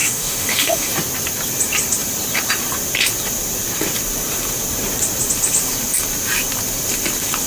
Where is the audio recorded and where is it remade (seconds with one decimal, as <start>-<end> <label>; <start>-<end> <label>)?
0.0-0.9 remade; 0.9-7.5 recorded